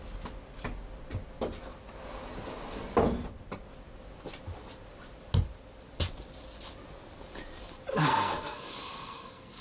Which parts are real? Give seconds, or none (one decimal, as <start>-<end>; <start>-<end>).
0.0-7.9